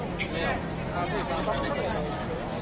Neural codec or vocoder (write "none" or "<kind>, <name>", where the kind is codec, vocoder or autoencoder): none